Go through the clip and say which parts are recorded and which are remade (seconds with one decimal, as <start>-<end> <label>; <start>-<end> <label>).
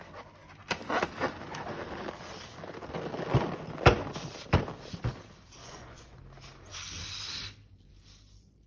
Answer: 0.0-5.6 recorded; 5.6-6.2 remade; 6.2-8.7 recorded